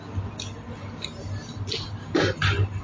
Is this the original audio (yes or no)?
yes